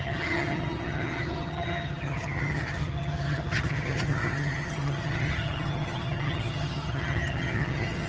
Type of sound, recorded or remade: remade